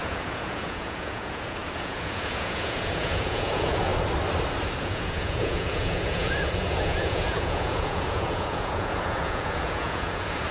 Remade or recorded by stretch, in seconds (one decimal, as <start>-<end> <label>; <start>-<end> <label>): 0.0-3.9 remade; 3.9-4.8 recorded; 4.8-10.5 remade